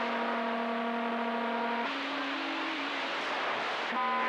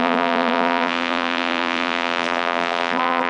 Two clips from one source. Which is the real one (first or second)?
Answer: first